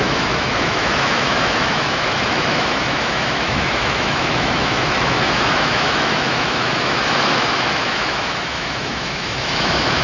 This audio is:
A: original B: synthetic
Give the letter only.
B